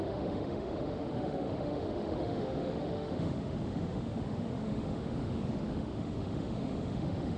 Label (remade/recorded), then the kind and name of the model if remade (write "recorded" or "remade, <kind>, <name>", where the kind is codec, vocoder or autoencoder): remade, autoencoder, DAC-VAE